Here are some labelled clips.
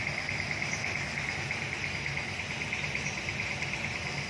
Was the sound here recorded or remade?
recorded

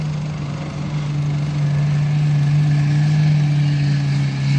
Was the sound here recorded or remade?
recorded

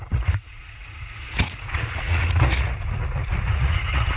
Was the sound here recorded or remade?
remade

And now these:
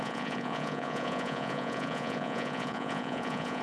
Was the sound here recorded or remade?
remade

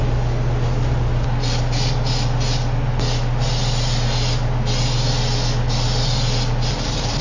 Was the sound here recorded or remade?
recorded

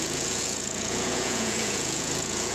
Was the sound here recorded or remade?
remade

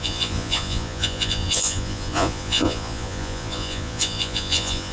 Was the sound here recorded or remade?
remade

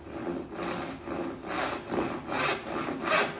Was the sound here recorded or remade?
recorded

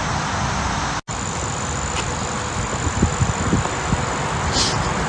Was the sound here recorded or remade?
recorded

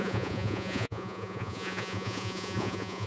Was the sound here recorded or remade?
remade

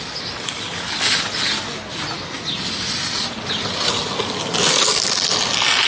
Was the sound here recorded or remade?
recorded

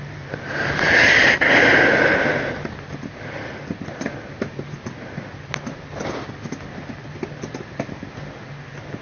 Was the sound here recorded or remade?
recorded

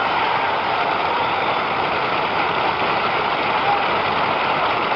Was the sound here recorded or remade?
recorded